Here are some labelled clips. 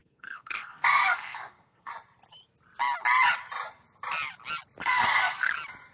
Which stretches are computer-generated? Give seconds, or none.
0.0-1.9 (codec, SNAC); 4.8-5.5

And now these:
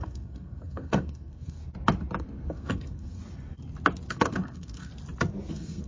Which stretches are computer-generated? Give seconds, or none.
0.0-1.6 (codec, SNAC); 2.2-3.2; 4.1-4.9; 5.5-5.9